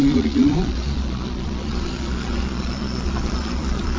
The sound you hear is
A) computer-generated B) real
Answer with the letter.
A